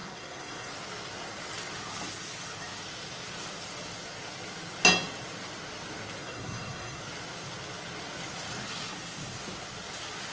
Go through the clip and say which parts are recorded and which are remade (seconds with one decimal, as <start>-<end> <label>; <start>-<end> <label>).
0.0-0.7 remade; 0.7-6.2 recorded; 6.2-7.0 remade; 7.0-10.3 recorded